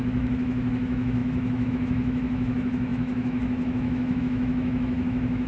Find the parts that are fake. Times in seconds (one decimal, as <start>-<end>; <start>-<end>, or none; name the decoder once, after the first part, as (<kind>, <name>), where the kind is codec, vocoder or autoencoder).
0.0-5.5 (autoencoder, DAC-VAE)